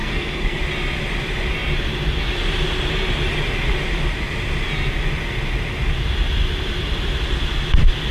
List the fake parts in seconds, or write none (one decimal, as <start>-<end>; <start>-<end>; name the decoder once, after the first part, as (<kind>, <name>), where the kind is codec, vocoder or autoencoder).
0.0-0.6 (codec, SNAC)